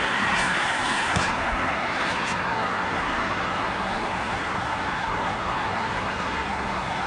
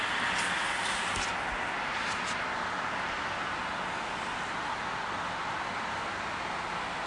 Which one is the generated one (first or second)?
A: first